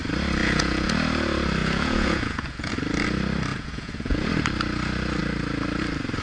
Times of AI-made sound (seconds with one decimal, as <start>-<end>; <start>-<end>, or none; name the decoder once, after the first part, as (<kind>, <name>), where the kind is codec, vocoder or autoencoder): 0.4-0.9 (vocoder, Vocos); 1.6-2.7; 3.5-4.3